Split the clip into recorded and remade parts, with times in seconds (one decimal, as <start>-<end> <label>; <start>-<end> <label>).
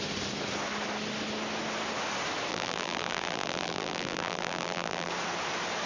0.0-2.5 recorded; 2.5-5.1 remade; 5.1-5.9 recorded